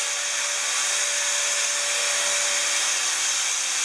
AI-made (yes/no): no